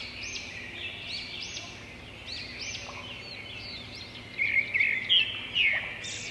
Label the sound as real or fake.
real